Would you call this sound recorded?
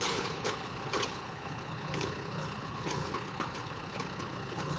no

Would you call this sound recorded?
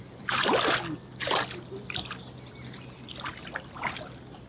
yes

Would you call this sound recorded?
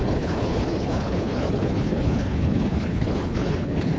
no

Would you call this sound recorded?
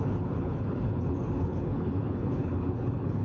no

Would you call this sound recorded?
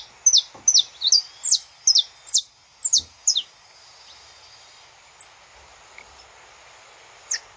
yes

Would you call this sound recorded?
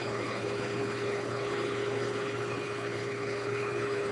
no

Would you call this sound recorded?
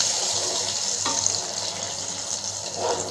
yes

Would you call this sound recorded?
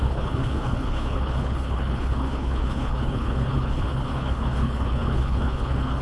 no